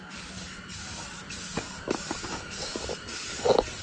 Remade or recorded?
recorded